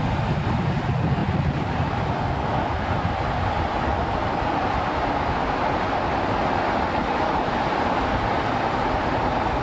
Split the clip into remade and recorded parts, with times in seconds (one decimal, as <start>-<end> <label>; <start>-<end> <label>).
0.0-1.2 recorded; 1.2-2.4 remade; 2.4-9.6 recorded